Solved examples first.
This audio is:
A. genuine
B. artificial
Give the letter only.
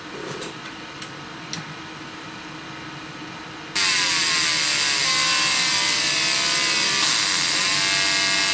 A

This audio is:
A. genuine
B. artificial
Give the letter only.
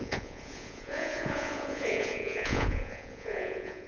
B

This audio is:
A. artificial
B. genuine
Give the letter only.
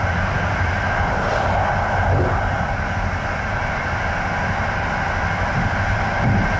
B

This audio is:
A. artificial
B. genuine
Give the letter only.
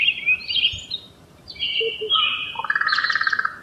A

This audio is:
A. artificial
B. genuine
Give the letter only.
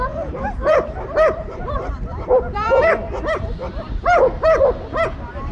A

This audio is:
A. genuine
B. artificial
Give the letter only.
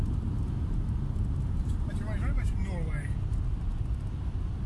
A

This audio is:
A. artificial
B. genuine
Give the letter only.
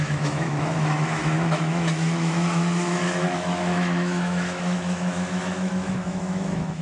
A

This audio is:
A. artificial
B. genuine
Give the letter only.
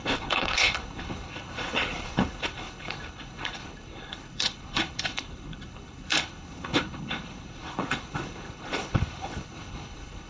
A